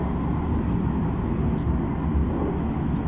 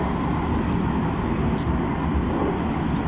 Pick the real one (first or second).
first